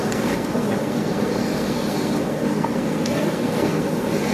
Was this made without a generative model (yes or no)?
no